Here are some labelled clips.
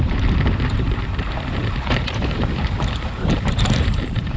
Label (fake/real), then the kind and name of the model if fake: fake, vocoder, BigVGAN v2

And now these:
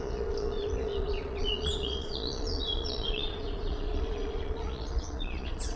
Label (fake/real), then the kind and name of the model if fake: fake, vocoder, Vocos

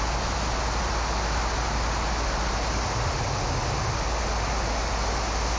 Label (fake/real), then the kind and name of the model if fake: real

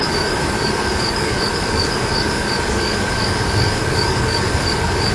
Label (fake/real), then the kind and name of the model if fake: fake, codec, DAC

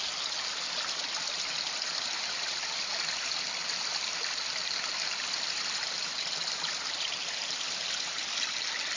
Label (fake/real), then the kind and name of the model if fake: real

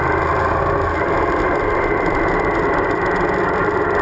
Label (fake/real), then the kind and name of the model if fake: real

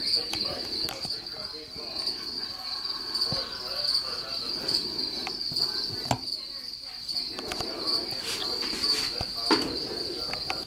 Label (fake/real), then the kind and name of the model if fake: real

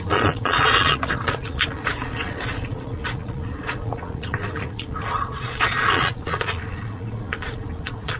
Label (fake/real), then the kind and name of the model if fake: fake, vocoder, Vocos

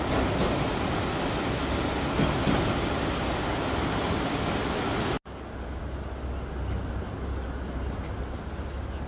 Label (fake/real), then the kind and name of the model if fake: real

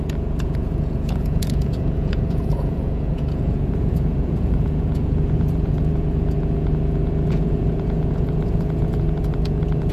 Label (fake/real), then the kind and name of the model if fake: fake, vocoder, Vocos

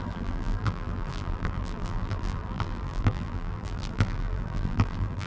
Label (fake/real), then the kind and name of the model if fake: fake, vocoder, BigVGAN v2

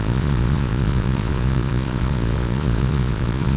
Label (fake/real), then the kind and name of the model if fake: fake, vocoder, Vocos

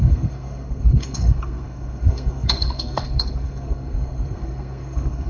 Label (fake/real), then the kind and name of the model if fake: fake, codec, SNAC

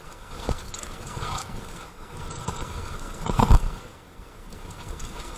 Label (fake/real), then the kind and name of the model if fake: fake, codec, SNAC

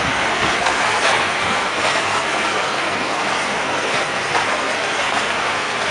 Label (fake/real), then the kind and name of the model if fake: fake, codec, SNAC